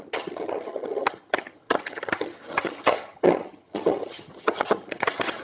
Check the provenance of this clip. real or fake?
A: fake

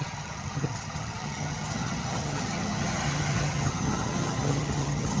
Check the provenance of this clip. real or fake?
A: fake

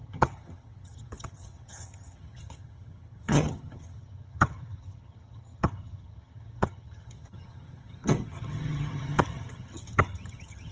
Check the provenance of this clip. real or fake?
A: fake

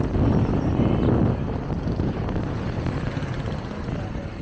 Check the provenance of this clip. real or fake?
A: real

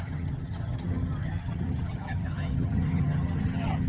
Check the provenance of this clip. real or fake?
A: fake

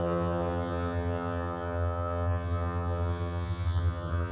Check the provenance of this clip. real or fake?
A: fake